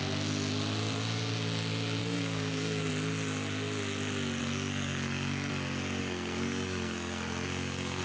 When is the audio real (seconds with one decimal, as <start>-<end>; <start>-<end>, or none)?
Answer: 0.0-2.0; 2.9-4.4; 5.5-6.0